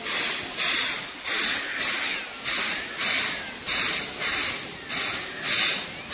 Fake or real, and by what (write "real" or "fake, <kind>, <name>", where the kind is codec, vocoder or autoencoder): real